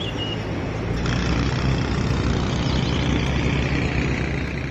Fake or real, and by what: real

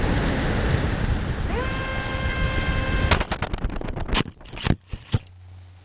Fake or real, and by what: real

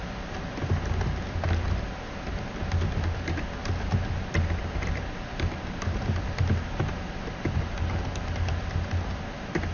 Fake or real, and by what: real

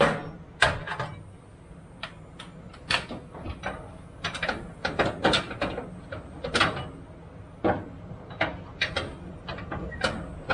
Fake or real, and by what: real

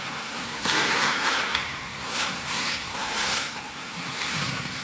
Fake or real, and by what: fake, codec, SNAC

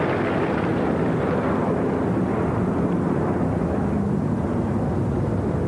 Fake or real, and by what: real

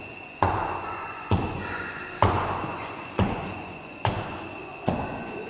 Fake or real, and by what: fake, vocoder, Vocos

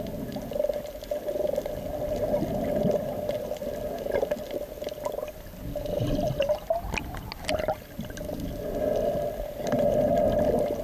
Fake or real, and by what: real